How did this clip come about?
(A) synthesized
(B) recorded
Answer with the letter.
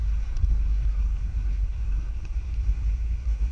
A